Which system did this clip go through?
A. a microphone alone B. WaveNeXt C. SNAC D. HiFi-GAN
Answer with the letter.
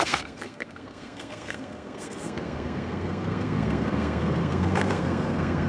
C